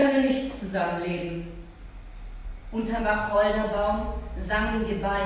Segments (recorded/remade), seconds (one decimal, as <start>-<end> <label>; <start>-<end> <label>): 0.0-5.3 recorded